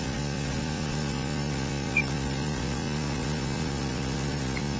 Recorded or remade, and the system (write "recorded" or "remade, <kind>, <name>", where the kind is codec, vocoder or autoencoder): remade, vocoder, Vocos